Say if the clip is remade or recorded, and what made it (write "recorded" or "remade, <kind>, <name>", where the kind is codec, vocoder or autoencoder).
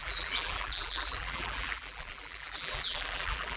remade, vocoder, BigVGAN v2